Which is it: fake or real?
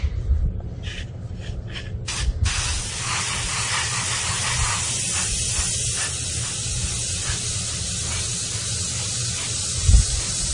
real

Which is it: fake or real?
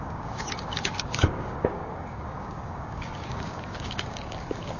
fake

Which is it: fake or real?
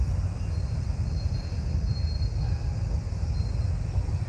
real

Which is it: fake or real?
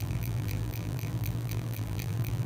fake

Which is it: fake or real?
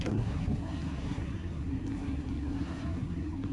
fake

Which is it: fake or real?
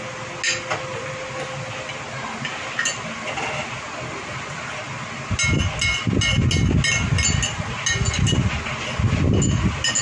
real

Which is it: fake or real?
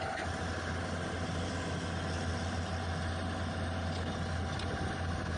real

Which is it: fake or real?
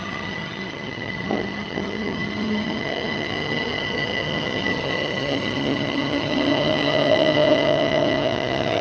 fake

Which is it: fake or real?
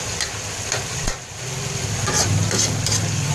real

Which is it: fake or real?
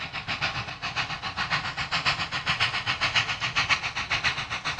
real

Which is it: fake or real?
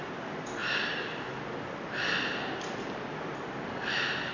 real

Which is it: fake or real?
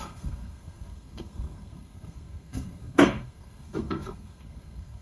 fake